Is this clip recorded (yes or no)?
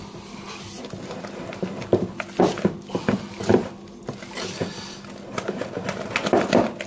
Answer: yes